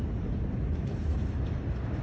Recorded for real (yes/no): yes